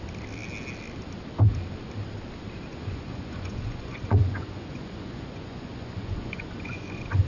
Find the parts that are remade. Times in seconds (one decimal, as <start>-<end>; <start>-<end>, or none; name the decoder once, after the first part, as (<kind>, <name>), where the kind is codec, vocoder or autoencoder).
2.7-7.3 (vocoder, Vocos)